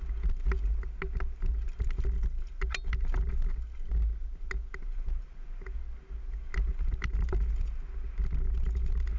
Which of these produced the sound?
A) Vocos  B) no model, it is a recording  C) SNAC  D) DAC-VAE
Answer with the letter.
B